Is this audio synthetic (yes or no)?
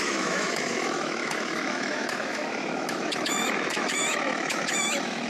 yes